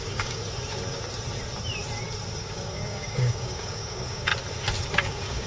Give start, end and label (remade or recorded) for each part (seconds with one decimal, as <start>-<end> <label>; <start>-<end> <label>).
0.0-0.4 remade; 0.4-2.4 recorded; 2.4-4.3 remade; 4.3-4.9 recorded; 4.9-5.5 remade